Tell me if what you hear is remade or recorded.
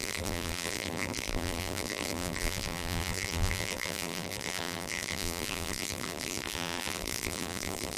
remade